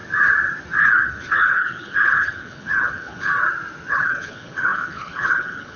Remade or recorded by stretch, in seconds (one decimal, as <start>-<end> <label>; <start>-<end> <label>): 0.0-0.8 recorded; 0.8-3.3 remade; 3.3-3.9 recorded; 3.9-5.8 remade